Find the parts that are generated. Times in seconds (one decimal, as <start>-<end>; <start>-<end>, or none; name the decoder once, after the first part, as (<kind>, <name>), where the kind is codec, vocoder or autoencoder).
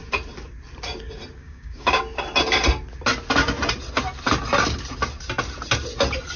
1.4-2.0 (codec, DAC)